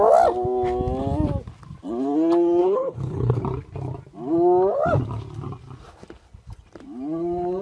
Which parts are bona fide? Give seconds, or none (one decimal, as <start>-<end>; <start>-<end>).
0.0-2.6; 3.4-7.6